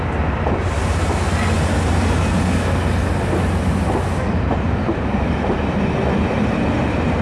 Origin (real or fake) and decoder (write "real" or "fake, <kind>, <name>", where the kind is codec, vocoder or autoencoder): real